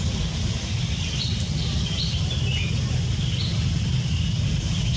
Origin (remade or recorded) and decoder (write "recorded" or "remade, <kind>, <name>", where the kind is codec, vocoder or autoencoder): recorded